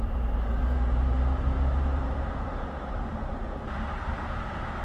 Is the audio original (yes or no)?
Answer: no